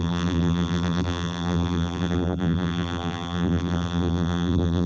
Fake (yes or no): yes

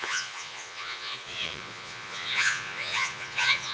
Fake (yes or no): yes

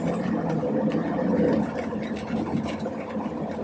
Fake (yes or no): no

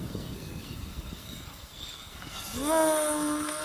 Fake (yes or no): yes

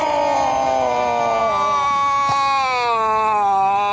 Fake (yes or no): no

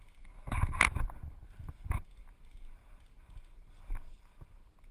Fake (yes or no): no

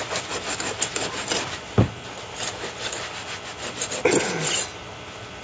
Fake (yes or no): no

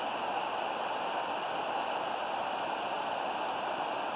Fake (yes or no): no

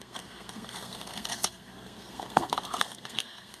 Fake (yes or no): yes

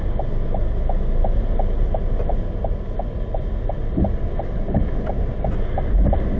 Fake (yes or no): no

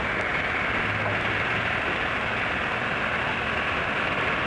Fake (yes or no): no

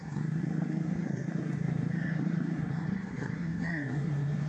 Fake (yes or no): yes